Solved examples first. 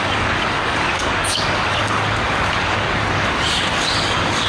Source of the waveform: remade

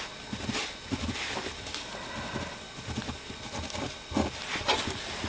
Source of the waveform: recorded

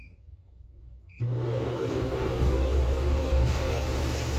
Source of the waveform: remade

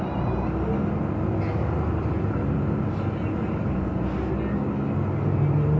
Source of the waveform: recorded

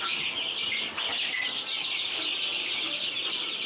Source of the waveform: recorded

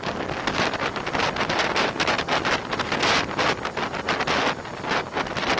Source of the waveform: recorded